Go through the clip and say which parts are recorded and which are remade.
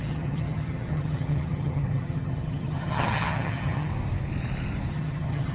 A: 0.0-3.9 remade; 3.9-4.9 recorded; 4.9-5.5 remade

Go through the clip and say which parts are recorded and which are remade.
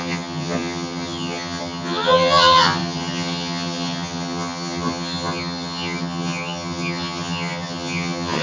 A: 0.0-8.4 remade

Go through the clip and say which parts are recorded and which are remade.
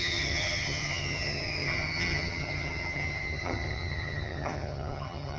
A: 0.0-5.4 remade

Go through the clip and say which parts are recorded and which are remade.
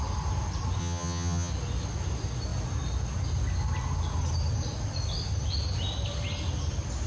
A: 0.0-0.8 recorded; 0.8-1.5 remade; 1.5-7.1 recorded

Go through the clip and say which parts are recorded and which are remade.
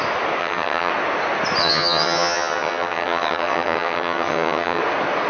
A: 0.0-0.4 recorded; 0.4-0.9 remade; 0.9-1.6 recorded; 1.6-4.8 remade; 4.8-5.3 recorded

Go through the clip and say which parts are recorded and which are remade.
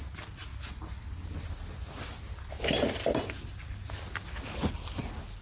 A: 0.0-5.4 recorded